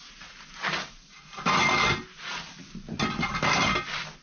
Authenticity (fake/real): real